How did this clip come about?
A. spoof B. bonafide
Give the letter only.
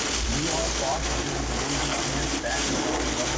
B